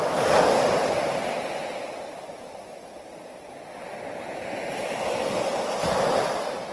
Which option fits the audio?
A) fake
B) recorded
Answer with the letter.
B